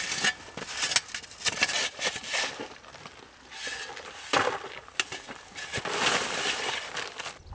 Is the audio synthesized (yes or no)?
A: no